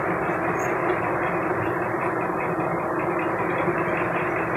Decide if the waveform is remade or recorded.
recorded